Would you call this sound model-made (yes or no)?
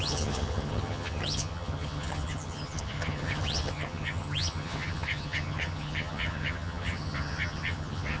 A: yes